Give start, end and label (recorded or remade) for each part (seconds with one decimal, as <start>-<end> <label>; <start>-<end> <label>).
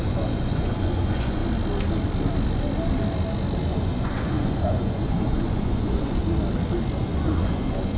0.0-1.4 remade; 1.4-3.7 recorded; 3.7-6.2 remade; 6.2-7.0 recorded; 7.0-8.0 remade